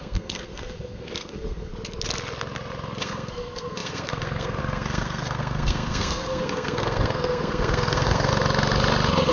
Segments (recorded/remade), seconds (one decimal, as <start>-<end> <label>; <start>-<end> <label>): 0.0-1.7 remade; 1.7-3.0 recorded; 3.0-8.3 remade; 8.3-9.3 recorded